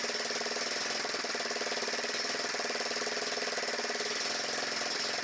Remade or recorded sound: recorded